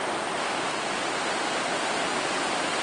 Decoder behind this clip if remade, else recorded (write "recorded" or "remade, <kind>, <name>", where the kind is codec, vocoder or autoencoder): recorded